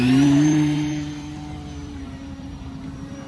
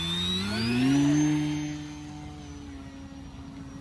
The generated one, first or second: first